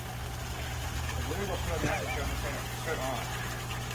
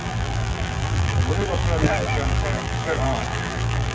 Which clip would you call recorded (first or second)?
first